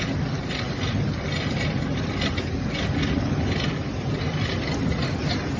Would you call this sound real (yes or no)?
yes